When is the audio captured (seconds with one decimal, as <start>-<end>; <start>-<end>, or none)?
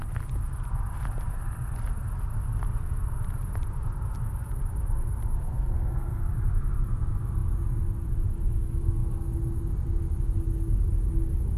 0.0-5.4; 6.2-11.6